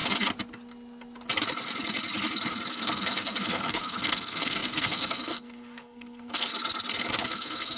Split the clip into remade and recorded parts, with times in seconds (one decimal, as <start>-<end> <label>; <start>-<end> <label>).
0.0-2.7 recorded; 2.7-6.5 remade; 6.5-7.2 recorded; 7.2-7.8 remade